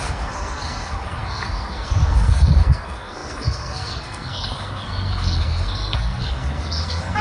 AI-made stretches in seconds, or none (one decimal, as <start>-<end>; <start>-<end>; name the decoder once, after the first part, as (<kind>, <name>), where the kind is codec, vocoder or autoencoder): 0.0-7.2 (codec, SNAC)